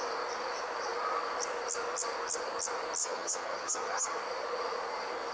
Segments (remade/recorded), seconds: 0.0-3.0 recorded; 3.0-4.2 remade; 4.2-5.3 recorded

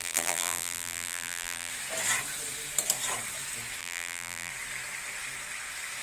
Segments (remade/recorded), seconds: 0.0-1.7 remade; 1.7-3.8 recorded; 3.8-4.5 remade; 4.5-6.0 recorded

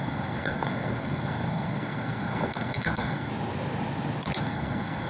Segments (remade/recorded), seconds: 0.0-3.3 remade; 3.3-4.4 recorded; 4.4-5.1 remade

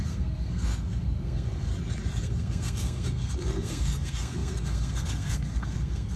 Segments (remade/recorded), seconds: 0.0-1.7 remade; 1.7-2.2 recorded; 2.2-6.2 remade

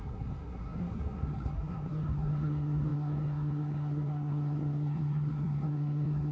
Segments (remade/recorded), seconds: 0.0-6.3 remade

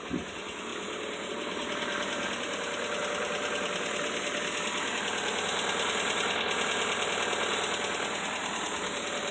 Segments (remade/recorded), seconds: 0.0-9.3 recorded

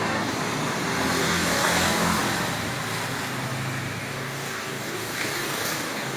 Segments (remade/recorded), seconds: 0.0-0.4 remade; 0.4-1.2 recorded; 1.2-2.2 remade; 2.2-4.0 recorded; 4.0-6.2 remade

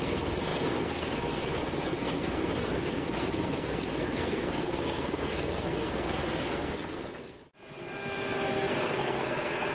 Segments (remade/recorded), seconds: 0.0-7.4 remade; 7.4-8.5 recorded; 8.5-9.7 remade